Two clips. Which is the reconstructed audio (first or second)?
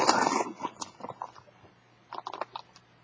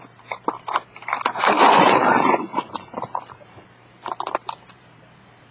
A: second